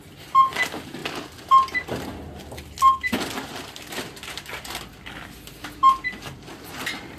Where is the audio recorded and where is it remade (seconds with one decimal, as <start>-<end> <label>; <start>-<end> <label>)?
0.0-7.2 recorded